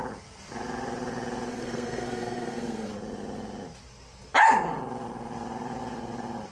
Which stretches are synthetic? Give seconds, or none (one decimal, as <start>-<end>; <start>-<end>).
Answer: 1.5-2.9